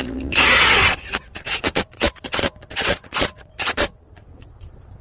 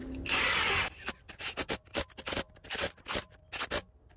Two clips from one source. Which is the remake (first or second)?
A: first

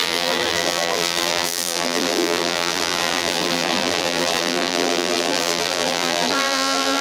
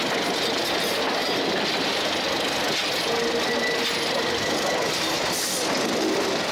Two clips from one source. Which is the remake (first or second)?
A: first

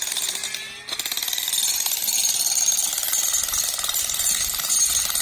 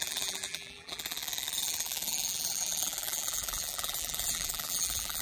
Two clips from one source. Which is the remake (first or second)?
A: second